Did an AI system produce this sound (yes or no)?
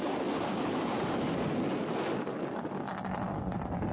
no